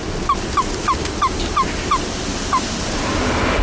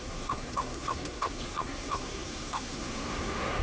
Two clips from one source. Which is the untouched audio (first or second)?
first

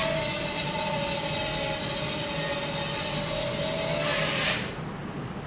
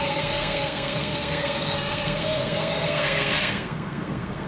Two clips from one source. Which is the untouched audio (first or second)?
first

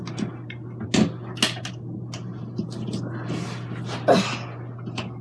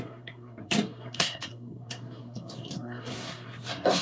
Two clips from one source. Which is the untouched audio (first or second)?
first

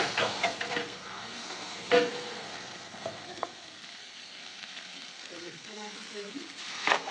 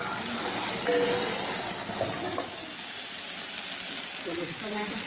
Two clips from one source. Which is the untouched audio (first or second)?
second